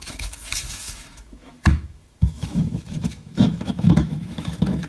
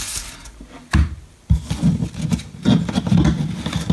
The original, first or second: second